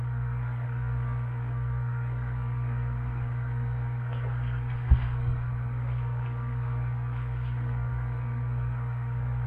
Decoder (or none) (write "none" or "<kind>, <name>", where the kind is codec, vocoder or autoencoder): codec, SNAC